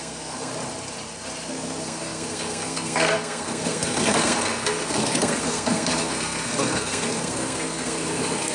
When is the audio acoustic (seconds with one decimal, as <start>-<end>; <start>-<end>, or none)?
0.5-1.5